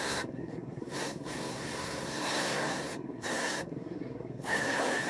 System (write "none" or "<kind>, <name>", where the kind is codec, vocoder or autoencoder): codec, SNAC